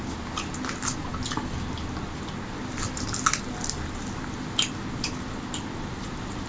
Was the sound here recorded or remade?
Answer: recorded